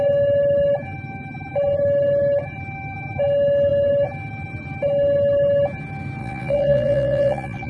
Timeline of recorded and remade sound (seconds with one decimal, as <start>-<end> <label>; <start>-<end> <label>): 0.0-6.2 recorded; 6.2-7.7 remade